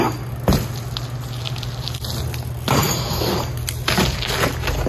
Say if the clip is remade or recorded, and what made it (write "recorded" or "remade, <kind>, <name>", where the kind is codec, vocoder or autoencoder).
recorded